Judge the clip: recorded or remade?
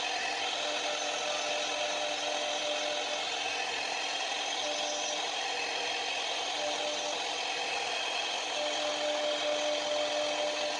recorded